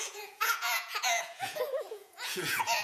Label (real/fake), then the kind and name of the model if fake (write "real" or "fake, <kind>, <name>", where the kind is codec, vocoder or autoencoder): fake, vocoder, Vocos